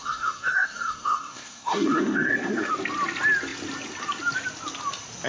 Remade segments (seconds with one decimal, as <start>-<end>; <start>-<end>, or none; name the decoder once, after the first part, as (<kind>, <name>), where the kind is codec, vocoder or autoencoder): 0.0-2.7 (codec, SNAC)